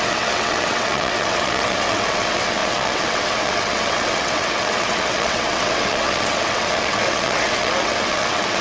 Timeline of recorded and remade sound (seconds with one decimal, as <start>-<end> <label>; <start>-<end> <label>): 0.0-8.6 remade